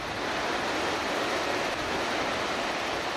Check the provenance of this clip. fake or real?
fake